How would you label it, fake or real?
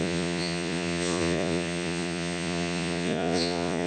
fake